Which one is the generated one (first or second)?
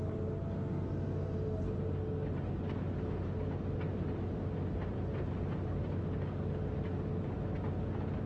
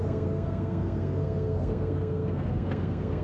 second